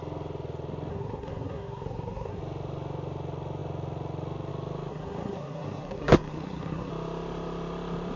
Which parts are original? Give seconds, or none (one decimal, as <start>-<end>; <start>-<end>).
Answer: 0.0-0.9; 2.4-4.9; 6.9-8.2